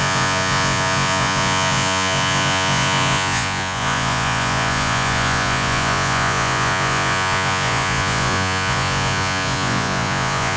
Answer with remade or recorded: remade